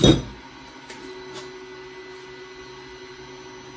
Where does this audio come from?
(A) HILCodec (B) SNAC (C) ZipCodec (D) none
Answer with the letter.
D